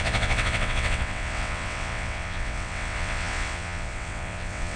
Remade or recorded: remade